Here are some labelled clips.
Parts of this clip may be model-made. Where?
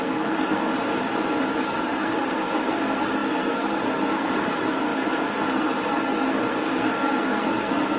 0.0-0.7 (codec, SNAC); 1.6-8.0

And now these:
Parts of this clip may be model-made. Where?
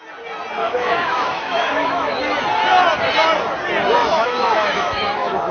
0.6-2.2 (autoencoder, DAC-VAE); 4.0-5.5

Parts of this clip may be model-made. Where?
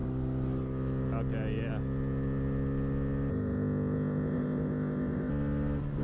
3.3-5.3 (codec, ZipCodec)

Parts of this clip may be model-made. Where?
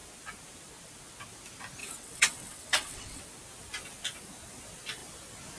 1.8-3.2 (vocoder, WaveNeXt)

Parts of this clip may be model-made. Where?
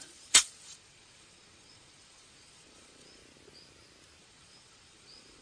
0.0-3.2 (vocoder, Vocos); 4.2-5.4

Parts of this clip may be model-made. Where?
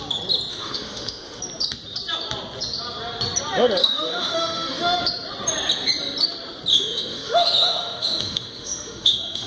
0.5-1.4 (autoencoder, DAC-VAE); 3.8-5.0; 6.7-9.5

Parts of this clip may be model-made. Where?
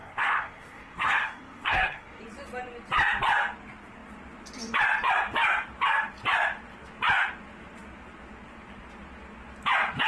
0.0-2.2 (codec, SNAC)